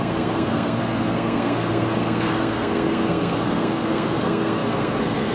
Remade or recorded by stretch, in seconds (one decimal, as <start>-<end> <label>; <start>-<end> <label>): 0.0-5.3 remade